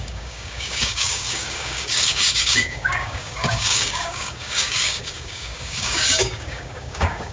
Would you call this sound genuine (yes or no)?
no